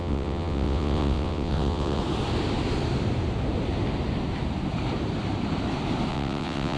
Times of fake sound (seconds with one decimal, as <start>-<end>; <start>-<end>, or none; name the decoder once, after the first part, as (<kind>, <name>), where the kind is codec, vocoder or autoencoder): 0.0-2.0 (vocoder, WaveNeXt); 6.1-6.8